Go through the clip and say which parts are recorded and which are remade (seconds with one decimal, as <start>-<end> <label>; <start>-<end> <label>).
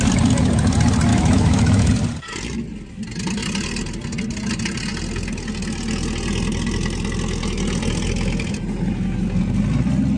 0.0-1.1 recorded; 1.1-1.9 remade; 1.9-10.2 recorded